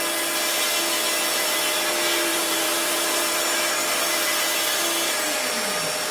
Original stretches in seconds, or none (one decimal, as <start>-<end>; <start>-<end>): 0.0-2.3; 3.4-6.1